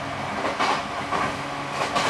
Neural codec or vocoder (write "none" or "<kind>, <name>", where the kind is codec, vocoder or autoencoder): none